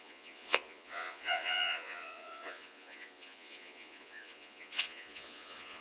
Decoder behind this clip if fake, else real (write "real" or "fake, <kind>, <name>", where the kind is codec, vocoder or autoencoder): fake, vocoder, Vocos